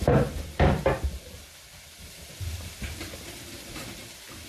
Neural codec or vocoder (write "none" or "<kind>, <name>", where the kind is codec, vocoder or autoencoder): vocoder, BigVGAN v2